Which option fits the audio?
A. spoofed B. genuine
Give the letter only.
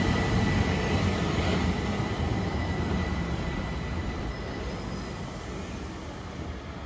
B